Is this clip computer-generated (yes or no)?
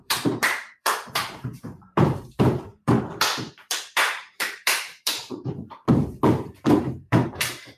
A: yes